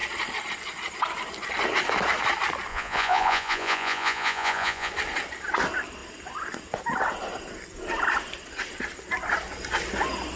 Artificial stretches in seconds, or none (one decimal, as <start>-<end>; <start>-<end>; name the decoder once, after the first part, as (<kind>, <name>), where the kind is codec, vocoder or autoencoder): 2.7-4.9 (vocoder, Vocos)